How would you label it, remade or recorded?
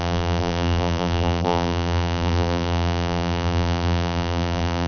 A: remade